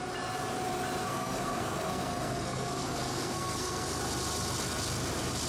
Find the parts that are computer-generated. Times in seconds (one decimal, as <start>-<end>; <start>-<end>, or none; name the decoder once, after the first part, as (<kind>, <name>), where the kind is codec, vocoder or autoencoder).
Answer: 1.0-4.0 (codec, SNAC)